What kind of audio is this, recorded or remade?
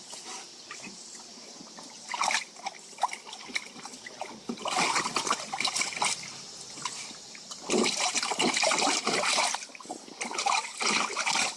recorded